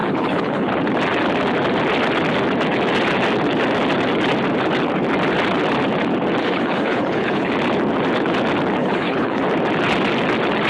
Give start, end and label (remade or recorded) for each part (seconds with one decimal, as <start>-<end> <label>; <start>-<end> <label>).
0.0-0.7 remade; 0.7-6.4 recorded; 6.4-7.5 remade; 7.5-8.8 recorded; 8.8-9.4 remade; 9.4-10.7 recorded